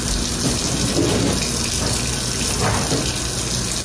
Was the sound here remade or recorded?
recorded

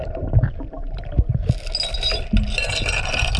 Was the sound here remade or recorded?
recorded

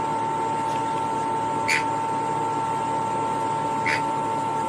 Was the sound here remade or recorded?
recorded